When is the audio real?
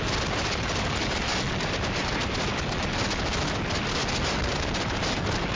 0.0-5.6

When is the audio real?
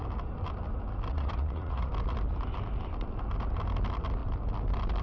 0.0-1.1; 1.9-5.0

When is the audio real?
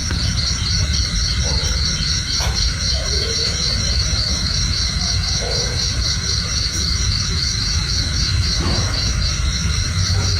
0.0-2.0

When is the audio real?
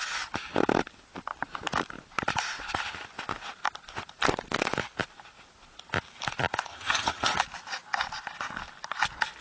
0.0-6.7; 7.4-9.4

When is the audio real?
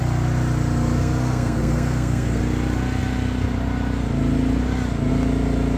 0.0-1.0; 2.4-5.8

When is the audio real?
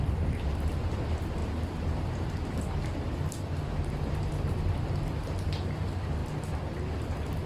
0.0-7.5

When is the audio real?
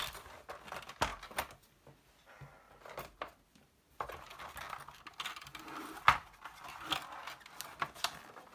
0.0-8.5